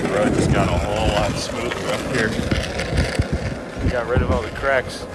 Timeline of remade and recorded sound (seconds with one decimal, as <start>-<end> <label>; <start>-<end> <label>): 0.0-5.1 recorded